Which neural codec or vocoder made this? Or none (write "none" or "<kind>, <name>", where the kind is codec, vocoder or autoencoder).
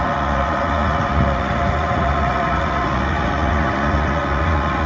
vocoder, Vocos